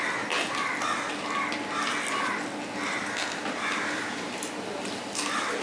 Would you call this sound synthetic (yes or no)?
no